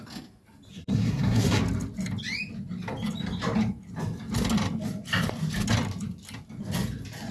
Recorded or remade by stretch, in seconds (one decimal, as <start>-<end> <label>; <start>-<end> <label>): 0.0-0.7 recorded; 0.7-1.6 remade; 1.6-7.3 recorded